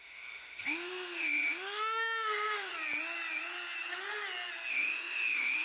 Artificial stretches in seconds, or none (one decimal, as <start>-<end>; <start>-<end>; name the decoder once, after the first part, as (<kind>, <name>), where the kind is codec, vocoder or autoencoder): 0.0-2.7 (autoencoder, DAC-VAE); 4.7-5.6

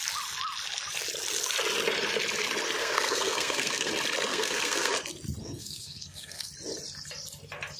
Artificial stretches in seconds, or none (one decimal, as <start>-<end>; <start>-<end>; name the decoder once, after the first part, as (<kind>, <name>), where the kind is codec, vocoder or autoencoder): 2.8-3.9 (codec, SNAC); 4.3-4.9; 5.4-6.5